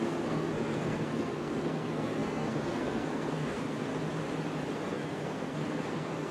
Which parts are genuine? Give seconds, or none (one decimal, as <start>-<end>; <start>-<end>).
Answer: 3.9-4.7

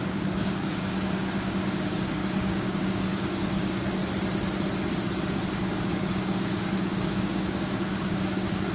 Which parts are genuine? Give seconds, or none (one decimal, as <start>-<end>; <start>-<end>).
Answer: 4.0-5.5

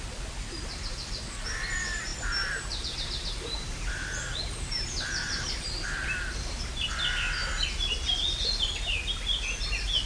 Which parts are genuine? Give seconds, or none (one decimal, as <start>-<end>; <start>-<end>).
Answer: 0.0-2.1; 6.9-10.1

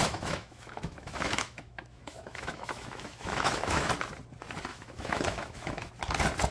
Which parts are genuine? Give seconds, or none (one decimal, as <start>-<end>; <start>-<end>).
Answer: 3.9-4.7; 5.9-6.5

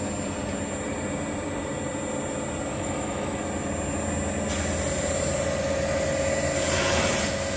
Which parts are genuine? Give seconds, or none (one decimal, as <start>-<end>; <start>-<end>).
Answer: 0.0-2.7; 3.4-7.6

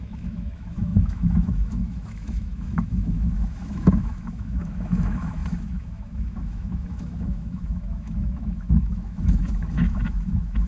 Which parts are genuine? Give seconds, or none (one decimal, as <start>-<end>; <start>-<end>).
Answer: none

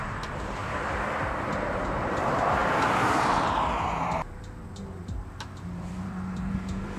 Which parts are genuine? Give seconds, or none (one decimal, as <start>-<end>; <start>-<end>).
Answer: 0.6-1.3

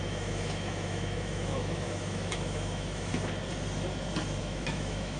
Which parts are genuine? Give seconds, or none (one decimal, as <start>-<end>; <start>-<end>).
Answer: 3.1-4.4